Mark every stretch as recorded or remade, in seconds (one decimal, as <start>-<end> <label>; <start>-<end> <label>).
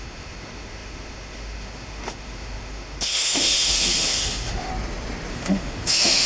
0.0-4.7 remade; 4.7-5.3 recorded; 5.3-6.3 remade